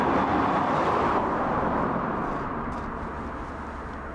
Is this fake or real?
real